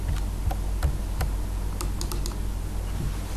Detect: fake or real real